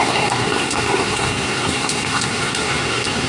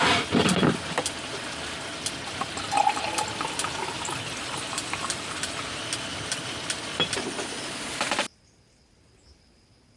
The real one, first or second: second